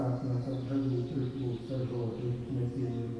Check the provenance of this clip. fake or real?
real